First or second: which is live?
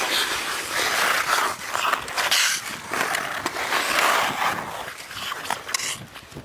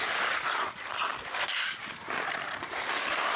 first